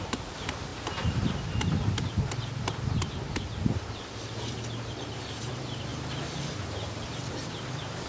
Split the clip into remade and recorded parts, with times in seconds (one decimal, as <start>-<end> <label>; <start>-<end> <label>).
0.0-0.7 remade; 0.7-5.5 recorded; 5.5-5.9 remade; 5.9-6.4 recorded; 6.4-8.1 remade